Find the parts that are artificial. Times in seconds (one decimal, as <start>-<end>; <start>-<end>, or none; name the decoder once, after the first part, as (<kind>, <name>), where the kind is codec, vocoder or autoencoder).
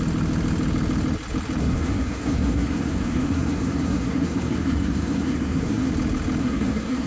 1.6-5.9 (codec, SNAC); 6.4-7.1